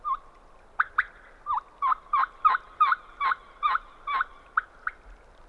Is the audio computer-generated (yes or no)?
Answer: no